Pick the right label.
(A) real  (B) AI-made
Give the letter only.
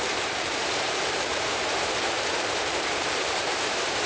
B